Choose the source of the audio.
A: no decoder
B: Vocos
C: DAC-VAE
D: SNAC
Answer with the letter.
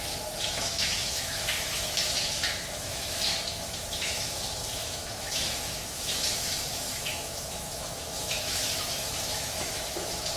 C